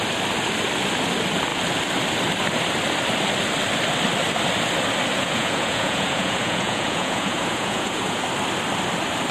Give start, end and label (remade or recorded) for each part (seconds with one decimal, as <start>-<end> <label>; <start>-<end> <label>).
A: 0.0-5.1 recorded; 5.1-8.2 remade; 8.2-9.3 recorded